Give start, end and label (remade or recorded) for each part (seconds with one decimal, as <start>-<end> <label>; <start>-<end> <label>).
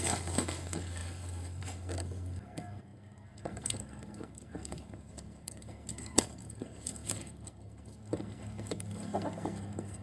0.0-10.0 remade